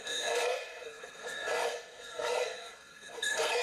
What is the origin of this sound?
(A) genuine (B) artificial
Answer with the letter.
B